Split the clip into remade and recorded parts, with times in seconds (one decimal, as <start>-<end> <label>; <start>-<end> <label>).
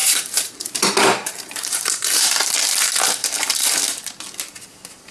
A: 0.0-2.5 remade; 2.5-5.1 recorded